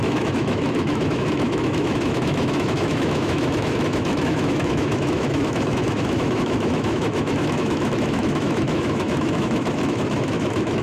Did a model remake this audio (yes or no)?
yes